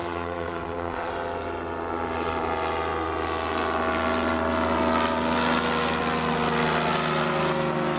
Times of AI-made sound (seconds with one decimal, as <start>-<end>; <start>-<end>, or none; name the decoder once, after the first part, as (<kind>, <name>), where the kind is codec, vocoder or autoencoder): 0.0-1.1 (vocoder, WaveNeXt)